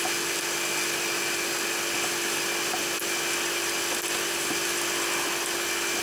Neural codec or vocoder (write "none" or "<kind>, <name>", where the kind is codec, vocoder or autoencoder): none